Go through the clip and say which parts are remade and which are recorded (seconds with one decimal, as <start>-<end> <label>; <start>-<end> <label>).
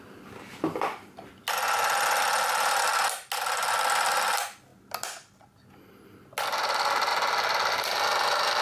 0.0-8.6 recorded